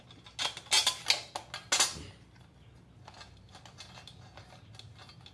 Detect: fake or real real